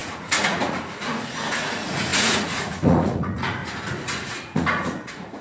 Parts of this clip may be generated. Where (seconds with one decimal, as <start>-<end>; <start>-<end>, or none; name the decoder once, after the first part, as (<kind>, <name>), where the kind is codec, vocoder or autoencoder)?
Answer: 0.0-3.6 (vocoder, Vocos); 4.3-5.4